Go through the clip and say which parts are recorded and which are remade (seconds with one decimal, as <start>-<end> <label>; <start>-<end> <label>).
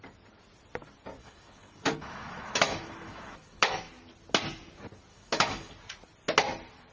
0.0-1.2 recorded; 1.2-3.9 remade; 3.9-5.1 recorded; 5.1-5.7 remade; 5.7-6.9 recorded